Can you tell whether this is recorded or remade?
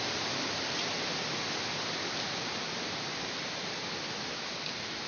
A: recorded